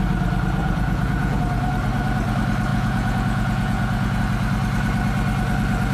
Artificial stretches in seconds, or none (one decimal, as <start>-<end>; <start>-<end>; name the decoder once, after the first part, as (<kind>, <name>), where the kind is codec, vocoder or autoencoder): 0.6-1.4 (vocoder, Vocos); 2.7-4.2